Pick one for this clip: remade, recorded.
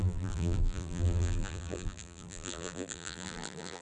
remade